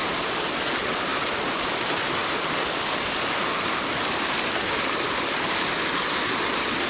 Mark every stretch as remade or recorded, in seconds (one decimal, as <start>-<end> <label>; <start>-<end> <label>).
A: 0.0-6.9 recorded